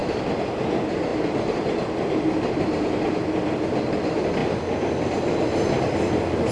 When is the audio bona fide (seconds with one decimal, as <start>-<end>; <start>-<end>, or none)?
4.4-5.1